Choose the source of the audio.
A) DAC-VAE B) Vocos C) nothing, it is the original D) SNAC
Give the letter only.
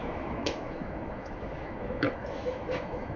A